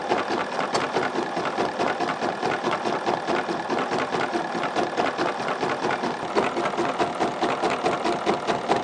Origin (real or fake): real